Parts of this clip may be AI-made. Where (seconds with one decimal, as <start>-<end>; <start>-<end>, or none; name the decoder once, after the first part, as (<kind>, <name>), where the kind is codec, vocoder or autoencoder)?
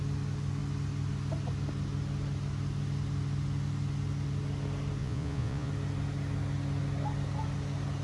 5.0-5.7 (vocoder, Vocos)